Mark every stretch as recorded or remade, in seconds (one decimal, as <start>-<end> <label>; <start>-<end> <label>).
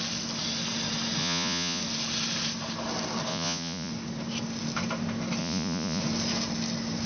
0.0-1.2 recorded; 1.2-1.8 remade; 1.8-3.3 recorded; 3.3-3.9 remade; 3.9-5.4 recorded; 5.4-6.0 remade; 6.0-7.1 recorded